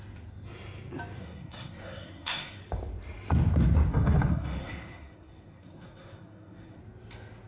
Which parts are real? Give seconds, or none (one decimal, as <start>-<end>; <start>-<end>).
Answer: 0.0-1.2; 2.6-3.9; 6.8-7.5